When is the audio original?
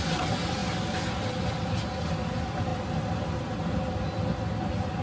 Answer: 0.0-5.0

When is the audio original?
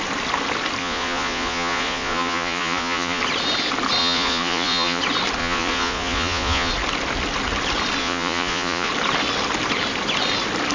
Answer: 0.0-0.8; 3.2-4.0; 5.0-5.4; 6.7-8.0; 8.9-10.7